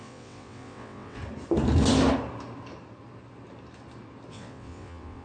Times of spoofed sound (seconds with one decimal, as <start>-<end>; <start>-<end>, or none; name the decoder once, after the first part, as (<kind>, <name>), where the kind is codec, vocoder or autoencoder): 0.0-1.2 (vocoder, WaveNeXt); 4.3-5.2